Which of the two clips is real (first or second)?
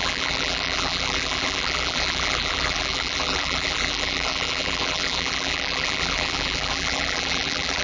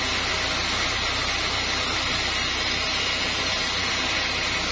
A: second